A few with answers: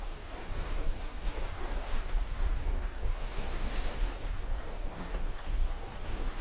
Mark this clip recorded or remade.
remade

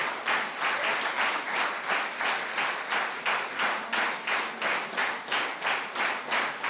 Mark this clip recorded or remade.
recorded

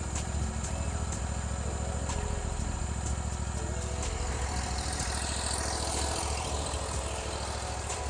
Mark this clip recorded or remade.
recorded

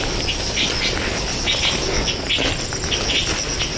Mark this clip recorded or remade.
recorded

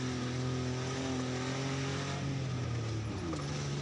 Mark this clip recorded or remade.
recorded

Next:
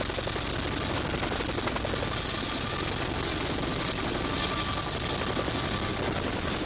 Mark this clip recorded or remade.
recorded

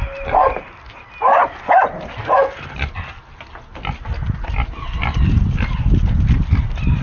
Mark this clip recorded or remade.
recorded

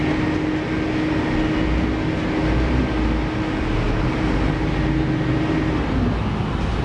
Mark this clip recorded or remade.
recorded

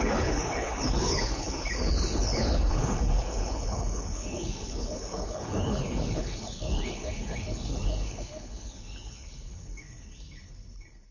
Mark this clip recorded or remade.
remade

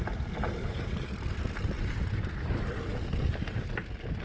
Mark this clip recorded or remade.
recorded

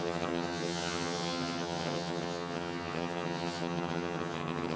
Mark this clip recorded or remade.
remade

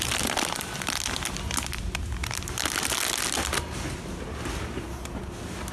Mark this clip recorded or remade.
recorded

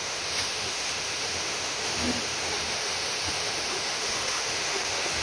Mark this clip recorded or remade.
remade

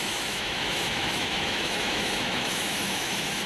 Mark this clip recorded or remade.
remade